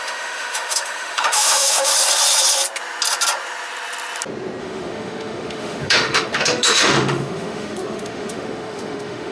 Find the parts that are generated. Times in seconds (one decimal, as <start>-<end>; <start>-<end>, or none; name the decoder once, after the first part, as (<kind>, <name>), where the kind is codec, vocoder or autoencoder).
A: 0.0-1.9 (autoencoder, DAC-VAE); 4.6-9.3